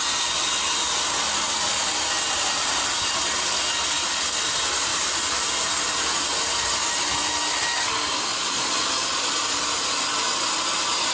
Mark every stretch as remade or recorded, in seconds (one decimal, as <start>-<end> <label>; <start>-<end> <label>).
0.0-8.3 recorded; 8.3-9.6 remade; 9.6-11.1 recorded